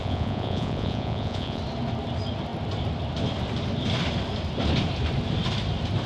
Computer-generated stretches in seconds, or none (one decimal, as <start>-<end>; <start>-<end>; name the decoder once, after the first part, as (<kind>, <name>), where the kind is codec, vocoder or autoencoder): 0.0-1.6 (vocoder, Vocos)